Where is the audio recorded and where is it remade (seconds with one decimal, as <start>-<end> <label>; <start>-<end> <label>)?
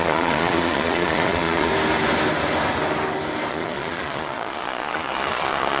0.0-1.7 remade; 1.7-3.5 recorded; 3.5-5.8 remade